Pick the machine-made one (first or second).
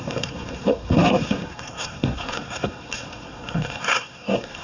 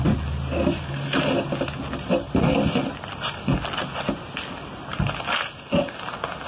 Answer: first